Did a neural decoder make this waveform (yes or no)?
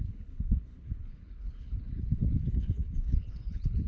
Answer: yes